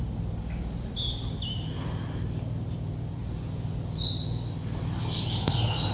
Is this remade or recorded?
recorded